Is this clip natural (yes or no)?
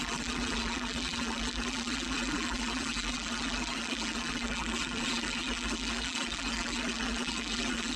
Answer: no